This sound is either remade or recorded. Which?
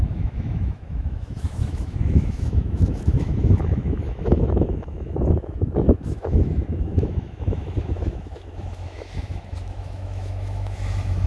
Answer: remade